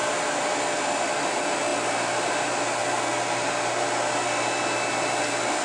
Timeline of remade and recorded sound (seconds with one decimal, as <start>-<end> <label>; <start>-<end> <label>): 0.0-0.6 remade; 0.6-5.6 recorded